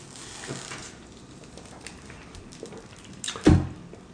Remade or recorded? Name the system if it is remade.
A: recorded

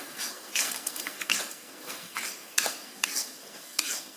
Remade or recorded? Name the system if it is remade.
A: remade, codec, SNAC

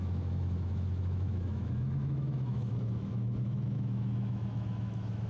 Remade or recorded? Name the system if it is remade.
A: remade, autoencoder, DAC-VAE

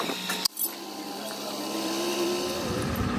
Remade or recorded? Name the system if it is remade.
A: remade, vocoder, BigVGAN v2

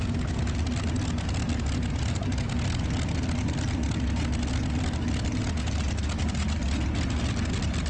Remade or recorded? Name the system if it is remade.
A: recorded